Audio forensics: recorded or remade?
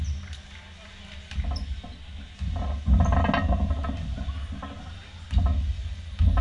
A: recorded